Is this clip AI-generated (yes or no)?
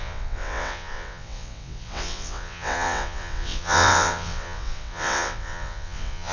yes